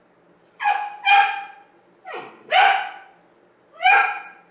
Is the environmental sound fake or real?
real